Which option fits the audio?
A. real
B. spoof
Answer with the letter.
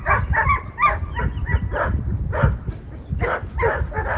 A